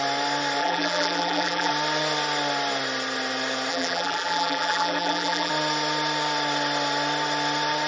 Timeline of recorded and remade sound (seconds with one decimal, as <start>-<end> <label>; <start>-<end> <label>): 0.0-0.6 recorded; 0.6-1.7 remade; 1.7-3.7 recorded; 3.7-5.5 remade; 5.5-7.9 recorded